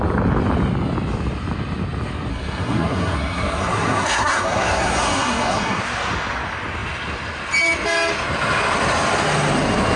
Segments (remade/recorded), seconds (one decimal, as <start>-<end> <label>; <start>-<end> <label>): 0.0-2.3 recorded; 2.3-5.8 remade; 5.8-10.0 recorded